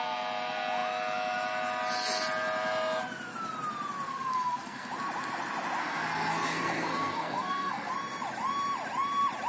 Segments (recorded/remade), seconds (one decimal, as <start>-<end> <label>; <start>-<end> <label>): 0.0-4.1 recorded; 4.1-4.9 remade; 4.9-5.8 recorded; 5.8-7.9 remade; 7.9-9.5 recorded